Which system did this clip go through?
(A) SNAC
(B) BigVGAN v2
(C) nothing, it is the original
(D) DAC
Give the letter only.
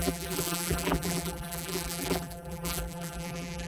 B